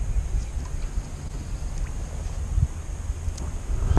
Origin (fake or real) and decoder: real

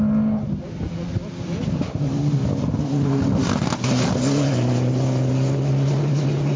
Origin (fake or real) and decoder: real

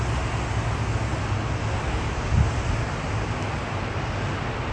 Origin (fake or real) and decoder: real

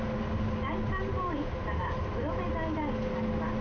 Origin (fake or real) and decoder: real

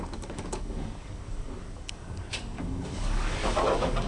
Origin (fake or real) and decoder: fake, codec, DAC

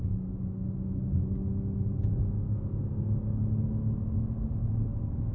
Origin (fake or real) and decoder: real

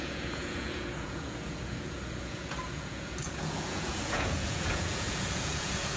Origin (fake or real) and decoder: fake, vocoder, Vocos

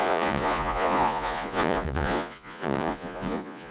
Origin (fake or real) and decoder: fake, vocoder, Vocos